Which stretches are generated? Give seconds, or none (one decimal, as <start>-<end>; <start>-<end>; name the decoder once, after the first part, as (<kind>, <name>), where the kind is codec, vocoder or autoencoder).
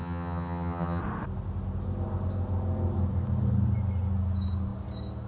0.0-1.0 (vocoder, HiFi-GAN)